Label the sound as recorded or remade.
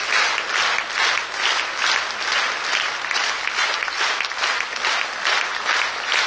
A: recorded